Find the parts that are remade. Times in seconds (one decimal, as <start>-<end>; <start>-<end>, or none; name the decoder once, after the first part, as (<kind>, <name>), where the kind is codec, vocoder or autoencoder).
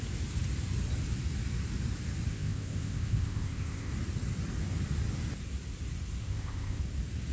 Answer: 2.3-3.9 (codec, ZipCodec); 6.2-6.8